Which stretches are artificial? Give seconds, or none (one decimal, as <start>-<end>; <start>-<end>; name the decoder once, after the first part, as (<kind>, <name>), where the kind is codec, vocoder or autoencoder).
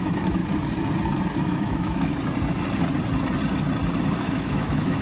0.0-0.4 (autoencoder, DAC-VAE); 1.4-2.1; 4.2-5.0